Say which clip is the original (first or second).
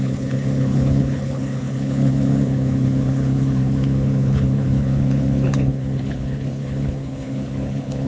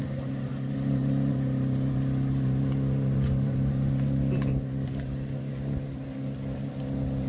second